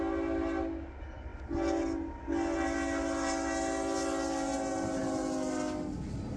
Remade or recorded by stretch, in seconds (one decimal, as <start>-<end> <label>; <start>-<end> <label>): 0.0-6.4 recorded